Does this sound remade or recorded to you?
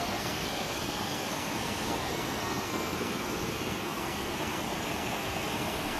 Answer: remade